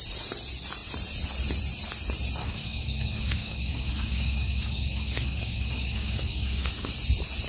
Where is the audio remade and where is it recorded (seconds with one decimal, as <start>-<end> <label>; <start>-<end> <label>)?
0.0-2.4 recorded; 2.4-6.9 remade; 6.9-7.5 recorded